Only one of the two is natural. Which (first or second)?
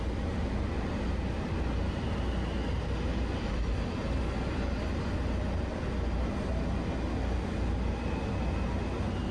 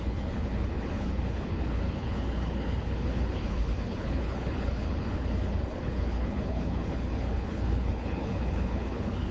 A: first